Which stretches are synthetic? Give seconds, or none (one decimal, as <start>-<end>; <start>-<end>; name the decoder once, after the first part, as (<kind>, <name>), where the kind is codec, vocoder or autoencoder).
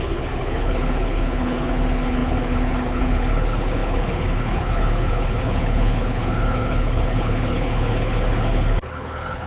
0.0-9.5 (codec, HILCodec)